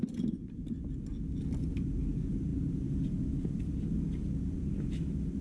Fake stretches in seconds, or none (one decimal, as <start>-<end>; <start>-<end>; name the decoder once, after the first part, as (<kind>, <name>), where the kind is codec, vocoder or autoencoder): none